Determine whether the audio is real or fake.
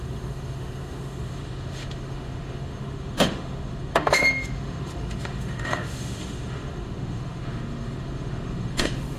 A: fake